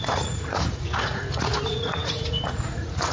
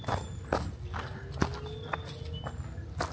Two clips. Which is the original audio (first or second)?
second